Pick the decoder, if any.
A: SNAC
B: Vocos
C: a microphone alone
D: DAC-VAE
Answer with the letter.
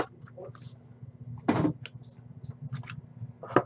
C